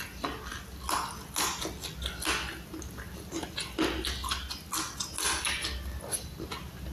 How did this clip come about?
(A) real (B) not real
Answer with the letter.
A